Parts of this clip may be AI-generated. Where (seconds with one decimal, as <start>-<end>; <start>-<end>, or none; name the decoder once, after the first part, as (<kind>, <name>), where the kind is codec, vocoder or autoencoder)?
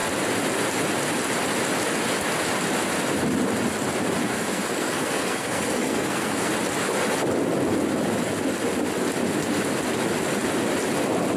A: 4.2-6.5 (codec, SNAC)